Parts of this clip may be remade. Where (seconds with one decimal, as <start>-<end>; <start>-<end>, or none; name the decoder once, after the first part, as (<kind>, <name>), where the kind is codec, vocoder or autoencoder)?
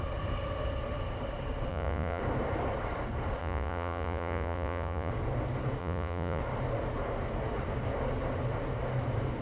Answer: 1.7-2.2 (vocoder, Vocos); 3.4-5.1; 5.8-6.4